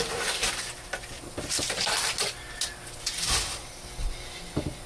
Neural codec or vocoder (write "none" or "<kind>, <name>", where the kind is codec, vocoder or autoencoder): none